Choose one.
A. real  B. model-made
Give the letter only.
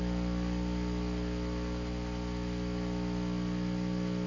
A